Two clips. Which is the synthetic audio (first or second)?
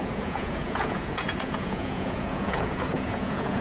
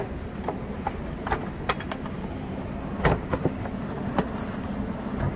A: first